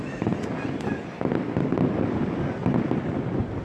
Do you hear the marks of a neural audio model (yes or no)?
no